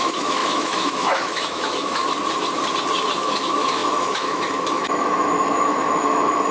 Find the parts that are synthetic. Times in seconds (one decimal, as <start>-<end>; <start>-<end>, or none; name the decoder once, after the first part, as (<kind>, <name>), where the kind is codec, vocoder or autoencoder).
0.0-2.0 (autoencoder, DAC-VAE); 3.2-6.5